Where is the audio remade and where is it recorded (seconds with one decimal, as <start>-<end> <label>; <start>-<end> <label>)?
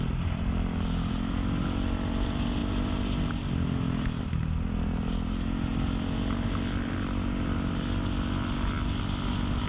0.0-9.7 recorded